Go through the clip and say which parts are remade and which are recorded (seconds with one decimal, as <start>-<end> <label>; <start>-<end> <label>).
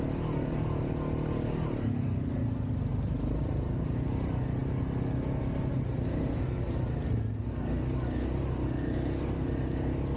0.0-10.2 recorded